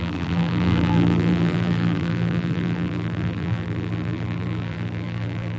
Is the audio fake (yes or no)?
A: yes